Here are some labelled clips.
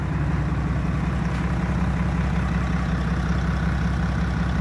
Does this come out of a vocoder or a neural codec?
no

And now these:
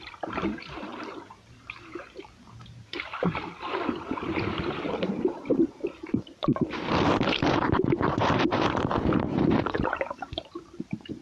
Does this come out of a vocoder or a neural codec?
yes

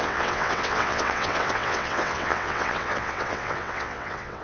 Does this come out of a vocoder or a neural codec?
yes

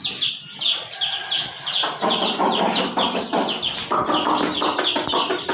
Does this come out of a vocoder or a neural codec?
no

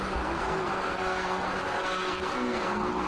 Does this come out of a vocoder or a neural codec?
yes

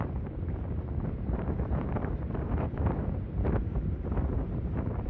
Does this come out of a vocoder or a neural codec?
yes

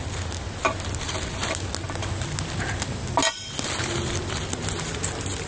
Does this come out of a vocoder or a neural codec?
no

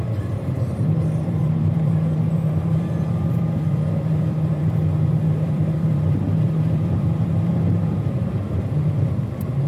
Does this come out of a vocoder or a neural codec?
yes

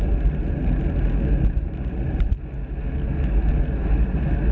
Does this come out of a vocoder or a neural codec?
no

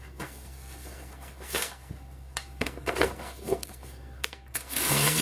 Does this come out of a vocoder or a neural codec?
yes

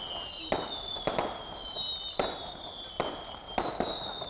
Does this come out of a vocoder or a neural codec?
no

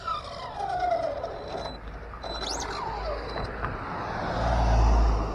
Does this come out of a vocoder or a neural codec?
no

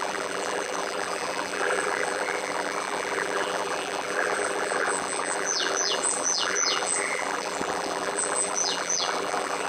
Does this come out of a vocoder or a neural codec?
yes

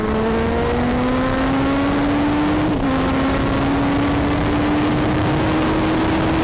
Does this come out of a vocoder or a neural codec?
no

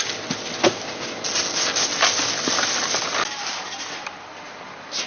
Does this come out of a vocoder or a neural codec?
no